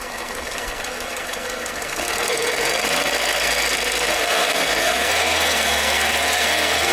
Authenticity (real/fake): fake